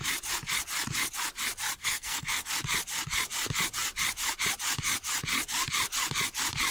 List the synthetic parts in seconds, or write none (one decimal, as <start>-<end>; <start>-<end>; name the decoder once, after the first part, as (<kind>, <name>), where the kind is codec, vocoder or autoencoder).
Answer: 1.8-2.5 (codec, SNAC)